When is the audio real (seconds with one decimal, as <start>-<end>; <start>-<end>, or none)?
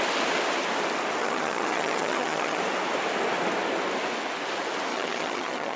0.0-1.2; 2.6-4.9